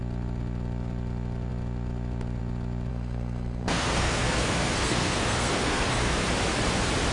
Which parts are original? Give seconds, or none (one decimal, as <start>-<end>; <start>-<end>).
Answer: 0.0-2.9; 6.3-7.1